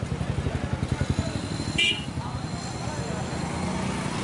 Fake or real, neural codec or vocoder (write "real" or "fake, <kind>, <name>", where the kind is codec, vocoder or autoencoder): real